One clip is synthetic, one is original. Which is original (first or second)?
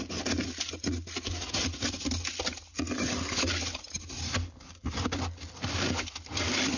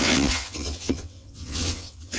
first